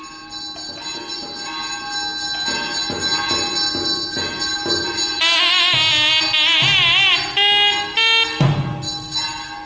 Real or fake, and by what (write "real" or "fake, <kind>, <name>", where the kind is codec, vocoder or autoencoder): real